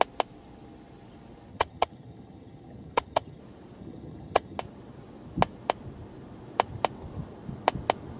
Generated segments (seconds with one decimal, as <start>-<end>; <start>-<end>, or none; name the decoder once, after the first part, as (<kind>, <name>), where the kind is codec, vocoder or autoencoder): 1.5-3.4 (vocoder, HiFi-GAN); 3.8-4.6